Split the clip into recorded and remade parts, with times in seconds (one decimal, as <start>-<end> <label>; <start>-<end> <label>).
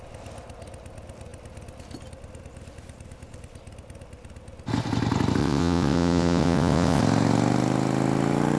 0.0-5.4 recorded; 5.4-7.0 remade; 7.0-8.6 recorded